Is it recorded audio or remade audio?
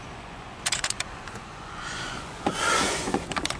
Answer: remade